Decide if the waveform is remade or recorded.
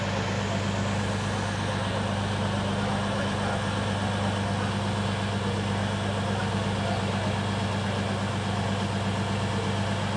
recorded